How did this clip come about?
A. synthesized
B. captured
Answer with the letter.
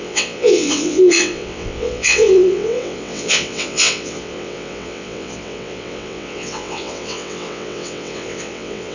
A